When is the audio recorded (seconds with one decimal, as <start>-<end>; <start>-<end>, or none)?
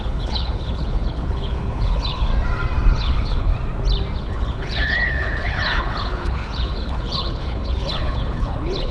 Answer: 2.3-2.9; 3.5-4.2